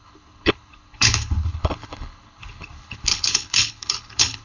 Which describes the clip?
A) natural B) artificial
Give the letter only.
B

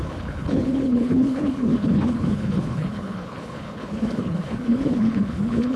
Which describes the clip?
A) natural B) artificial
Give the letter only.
B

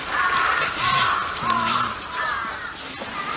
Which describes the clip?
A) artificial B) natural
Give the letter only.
B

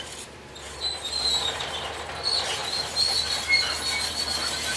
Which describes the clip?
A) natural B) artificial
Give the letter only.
A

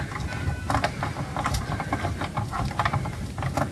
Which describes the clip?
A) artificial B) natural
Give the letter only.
B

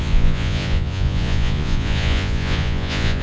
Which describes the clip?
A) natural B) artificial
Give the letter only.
B